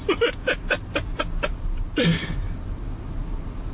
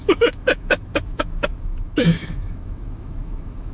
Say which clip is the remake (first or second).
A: second